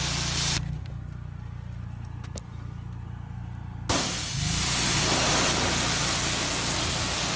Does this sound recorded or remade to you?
recorded